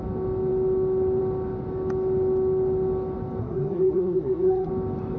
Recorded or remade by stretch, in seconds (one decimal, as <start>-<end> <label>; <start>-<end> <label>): 0.0-3.4 recorded; 3.4-4.7 remade; 4.7-5.2 recorded